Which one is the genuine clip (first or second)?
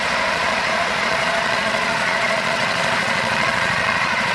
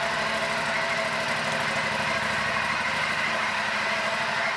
second